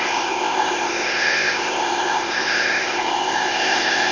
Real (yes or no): no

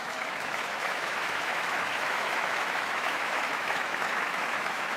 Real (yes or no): no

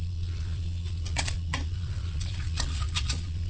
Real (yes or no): no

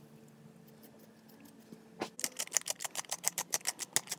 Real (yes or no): yes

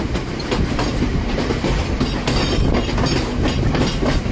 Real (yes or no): yes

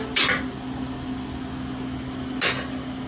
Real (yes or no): yes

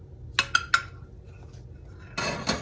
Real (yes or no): yes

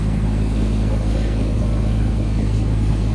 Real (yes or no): no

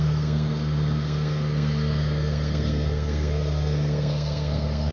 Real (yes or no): no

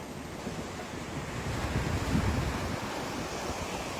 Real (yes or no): yes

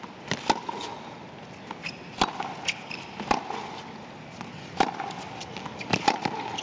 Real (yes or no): yes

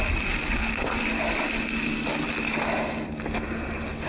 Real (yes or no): yes